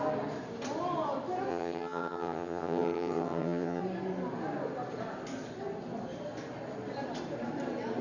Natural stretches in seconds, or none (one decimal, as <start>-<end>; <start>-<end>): 0.0-1.5; 3.8-8.0

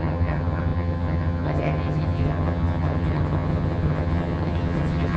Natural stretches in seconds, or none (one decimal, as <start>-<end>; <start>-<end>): none

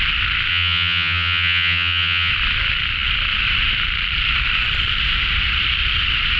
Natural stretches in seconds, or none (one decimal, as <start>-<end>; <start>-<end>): 0.0-0.5; 2.3-6.4

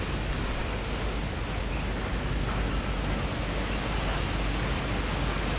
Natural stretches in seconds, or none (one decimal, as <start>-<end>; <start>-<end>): 0.0-5.6